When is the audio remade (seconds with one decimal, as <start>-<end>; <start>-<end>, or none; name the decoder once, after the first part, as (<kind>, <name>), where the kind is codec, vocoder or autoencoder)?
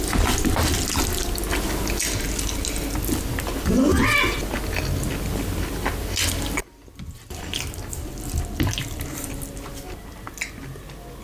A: none